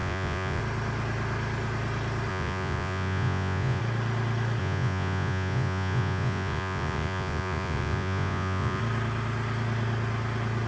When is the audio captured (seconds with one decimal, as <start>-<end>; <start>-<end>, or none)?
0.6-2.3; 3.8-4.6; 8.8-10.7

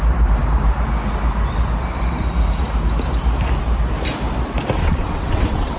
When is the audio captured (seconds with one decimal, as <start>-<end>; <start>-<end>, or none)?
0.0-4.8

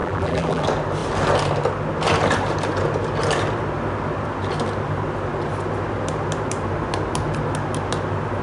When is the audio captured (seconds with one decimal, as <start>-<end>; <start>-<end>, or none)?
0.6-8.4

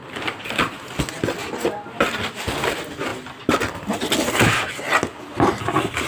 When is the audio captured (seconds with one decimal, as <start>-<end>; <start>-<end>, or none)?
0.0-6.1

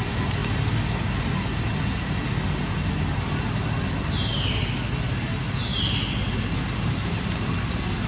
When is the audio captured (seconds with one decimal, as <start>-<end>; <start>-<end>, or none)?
0.0-8.1

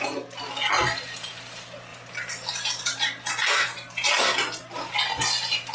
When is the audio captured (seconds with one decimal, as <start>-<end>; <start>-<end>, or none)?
0.0-5.7

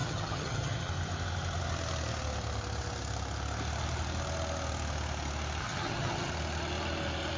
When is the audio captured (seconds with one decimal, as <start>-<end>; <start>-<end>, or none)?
0.9-5.6; 6.3-7.4